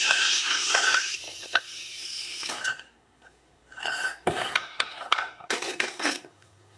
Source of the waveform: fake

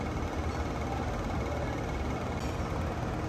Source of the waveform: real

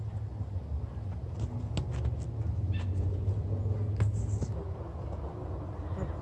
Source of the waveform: real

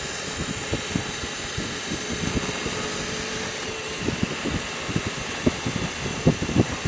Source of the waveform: real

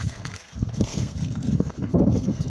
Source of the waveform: fake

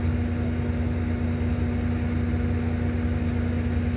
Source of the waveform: real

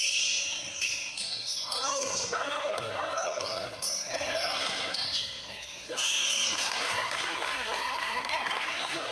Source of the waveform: fake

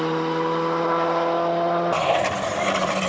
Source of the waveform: real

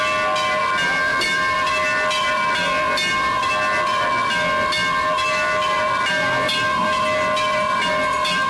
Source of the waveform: real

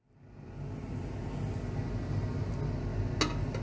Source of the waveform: real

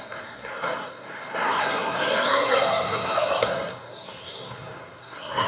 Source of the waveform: fake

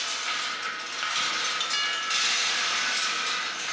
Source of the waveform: real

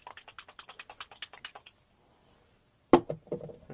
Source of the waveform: real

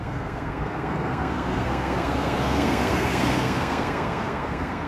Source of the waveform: fake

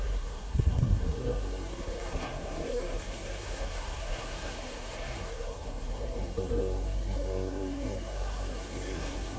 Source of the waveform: fake